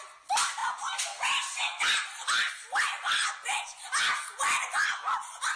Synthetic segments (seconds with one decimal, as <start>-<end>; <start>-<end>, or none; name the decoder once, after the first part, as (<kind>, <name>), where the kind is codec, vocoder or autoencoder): none